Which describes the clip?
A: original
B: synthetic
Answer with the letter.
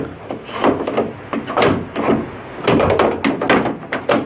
A